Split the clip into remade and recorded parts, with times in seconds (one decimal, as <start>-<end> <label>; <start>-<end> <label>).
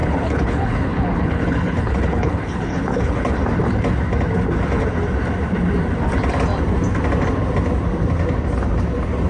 0.0-3.4 remade; 3.4-9.3 recorded